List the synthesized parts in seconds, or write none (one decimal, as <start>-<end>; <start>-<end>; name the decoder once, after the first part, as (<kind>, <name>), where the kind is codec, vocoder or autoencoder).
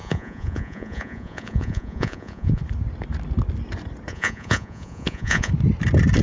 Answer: 0.0-2.6 (vocoder, Vocos); 4.1-5.5